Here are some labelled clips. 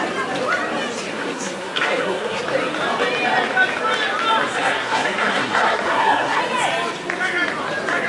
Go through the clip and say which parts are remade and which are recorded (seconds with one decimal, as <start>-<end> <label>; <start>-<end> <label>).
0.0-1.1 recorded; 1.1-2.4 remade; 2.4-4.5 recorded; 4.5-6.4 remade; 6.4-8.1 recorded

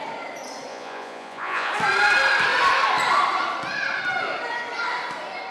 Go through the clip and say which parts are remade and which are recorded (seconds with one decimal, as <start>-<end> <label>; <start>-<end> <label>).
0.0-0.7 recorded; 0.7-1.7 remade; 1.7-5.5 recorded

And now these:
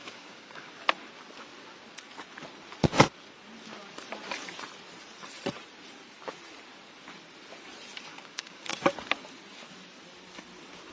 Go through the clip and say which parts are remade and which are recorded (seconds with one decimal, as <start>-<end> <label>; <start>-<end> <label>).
0.0-0.7 remade; 0.7-8.1 recorded; 8.1-8.7 remade; 8.7-10.9 recorded

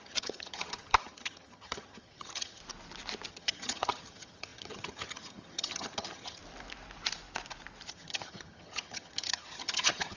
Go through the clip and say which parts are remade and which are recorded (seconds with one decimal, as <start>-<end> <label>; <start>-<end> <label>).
0.0-2.6 remade; 2.6-3.3 recorded; 3.3-6.4 remade; 6.4-7.9 recorded; 7.9-10.2 remade

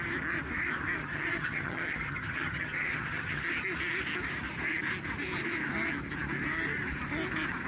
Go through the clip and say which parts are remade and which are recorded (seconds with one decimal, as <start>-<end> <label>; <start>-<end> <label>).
0.0-1.0 recorded; 1.0-3.4 remade; 3.4-7.7 recorded

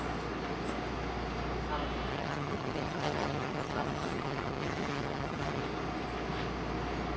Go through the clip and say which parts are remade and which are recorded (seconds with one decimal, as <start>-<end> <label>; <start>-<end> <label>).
0.0-2.1 recorded; 2.1-5.6 remade; 5.6-7.2 recorded

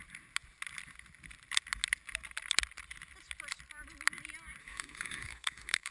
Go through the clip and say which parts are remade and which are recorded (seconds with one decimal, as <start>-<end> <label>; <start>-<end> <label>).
0.0-4.6 recorded; 4.6-5.9 remade

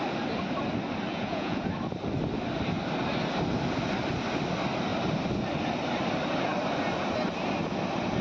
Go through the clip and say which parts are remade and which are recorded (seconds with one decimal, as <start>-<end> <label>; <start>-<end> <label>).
0.0-1.1 recorded; 1.1-1.7 remade; 1.7-8.2 recorded